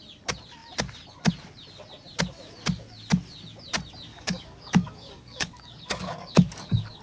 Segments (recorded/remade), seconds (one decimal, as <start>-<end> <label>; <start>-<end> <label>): 0.0-4.1 recorded; 4.1-7.0 remade